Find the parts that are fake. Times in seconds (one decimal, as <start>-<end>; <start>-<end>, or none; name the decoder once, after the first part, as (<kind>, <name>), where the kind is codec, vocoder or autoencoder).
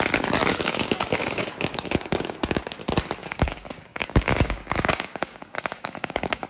0.5-2.8 (codec, DAC); 3.2-6.5